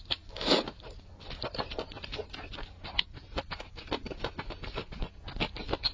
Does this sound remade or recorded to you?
recorded